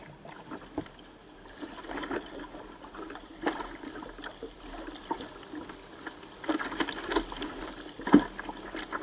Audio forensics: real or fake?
real